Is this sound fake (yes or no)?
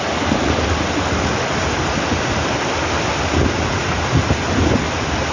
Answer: no